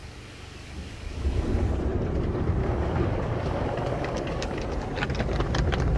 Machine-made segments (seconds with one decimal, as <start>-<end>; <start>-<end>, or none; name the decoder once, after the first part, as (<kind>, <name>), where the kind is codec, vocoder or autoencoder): 0.0-1.4 (codec, DAC); 2.6-4.6